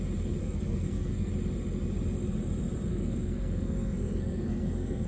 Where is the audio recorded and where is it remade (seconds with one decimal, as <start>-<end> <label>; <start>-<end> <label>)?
0.0-0.4 recorded; 0.4-1.3 remade; 1.3-2.9 recorded; 2.9-5.1 remade